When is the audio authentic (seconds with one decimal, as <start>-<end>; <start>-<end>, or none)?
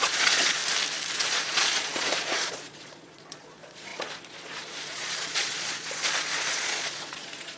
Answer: 0.6-1.1